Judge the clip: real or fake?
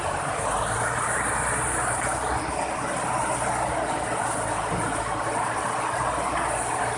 real